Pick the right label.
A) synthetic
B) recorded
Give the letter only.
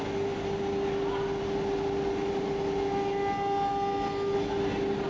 B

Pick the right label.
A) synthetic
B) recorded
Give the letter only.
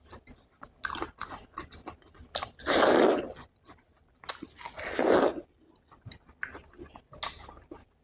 B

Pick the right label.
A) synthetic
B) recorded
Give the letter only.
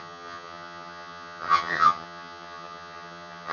A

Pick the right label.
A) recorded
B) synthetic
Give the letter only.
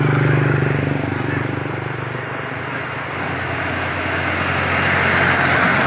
A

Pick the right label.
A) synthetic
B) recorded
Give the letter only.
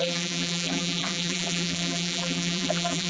A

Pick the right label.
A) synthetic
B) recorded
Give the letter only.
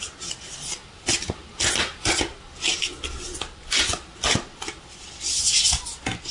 B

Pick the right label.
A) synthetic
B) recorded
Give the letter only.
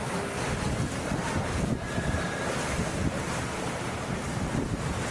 B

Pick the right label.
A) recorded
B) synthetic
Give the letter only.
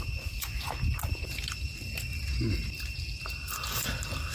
A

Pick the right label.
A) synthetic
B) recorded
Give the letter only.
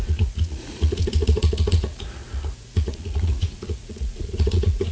A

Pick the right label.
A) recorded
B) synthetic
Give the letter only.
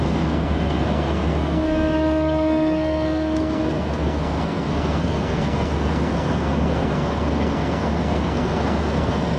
B